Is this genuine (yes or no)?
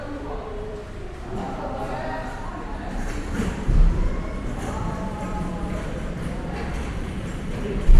no